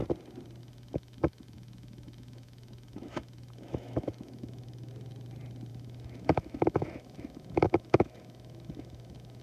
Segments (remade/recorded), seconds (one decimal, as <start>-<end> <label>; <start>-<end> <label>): 0.0-0.6 recorded; 0.6-4.9 remade; 4.9-5.7 recorded; 5.7-9.4 remade